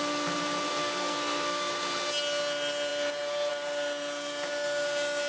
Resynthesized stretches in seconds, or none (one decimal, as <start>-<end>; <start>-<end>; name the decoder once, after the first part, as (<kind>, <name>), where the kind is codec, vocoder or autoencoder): 0.8-1.7 (codec, SNAC)